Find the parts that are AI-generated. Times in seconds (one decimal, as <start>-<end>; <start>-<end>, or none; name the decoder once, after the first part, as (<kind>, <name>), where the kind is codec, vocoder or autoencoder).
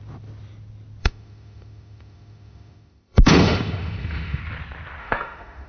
1.0-4.4 (autoencoder, DAC-VAE); 5.0-5.7